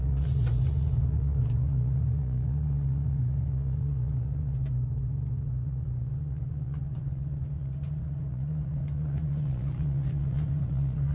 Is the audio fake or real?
fake